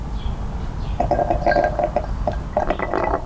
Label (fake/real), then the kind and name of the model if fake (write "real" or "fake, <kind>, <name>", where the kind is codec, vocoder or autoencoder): real